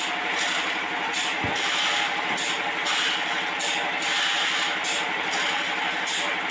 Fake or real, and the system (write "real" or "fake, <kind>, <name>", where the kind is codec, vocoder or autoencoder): real